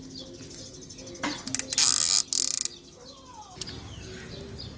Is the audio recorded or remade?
recorded